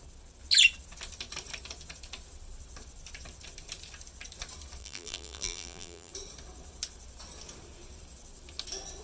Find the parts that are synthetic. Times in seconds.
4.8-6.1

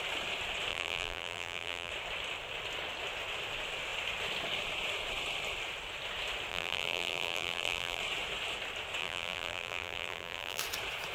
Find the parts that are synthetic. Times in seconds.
0.7-1.9; 6.5-8.0; 9.0-10.6

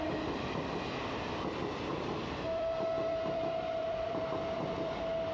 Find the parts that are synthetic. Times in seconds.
0.0-5.3

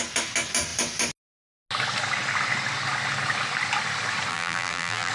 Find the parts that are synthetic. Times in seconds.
4.3-5.1

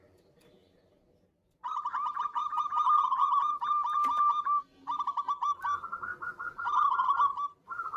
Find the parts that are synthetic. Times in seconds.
0.0-2.4; 4.2-8.0

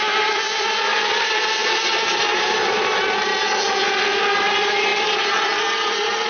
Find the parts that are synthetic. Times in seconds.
0.0-3.3; 4.3-6.3

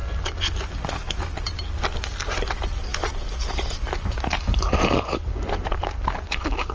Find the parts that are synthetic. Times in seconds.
none